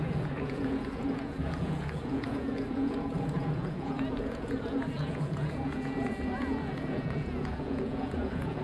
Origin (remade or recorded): remade